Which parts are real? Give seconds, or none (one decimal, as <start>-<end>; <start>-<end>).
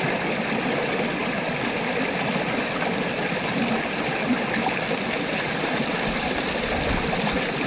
0.0-7.7